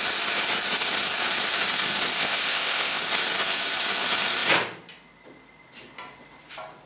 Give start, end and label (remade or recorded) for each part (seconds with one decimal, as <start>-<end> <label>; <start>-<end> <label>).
0.0-2.2 recorded; 2.2-3.0 remade; 3.0-6.9 recorded